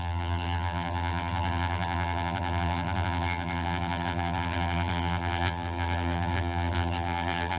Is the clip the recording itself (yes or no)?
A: no